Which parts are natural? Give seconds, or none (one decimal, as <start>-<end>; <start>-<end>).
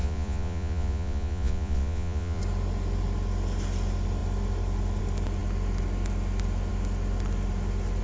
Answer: 2.4-8.0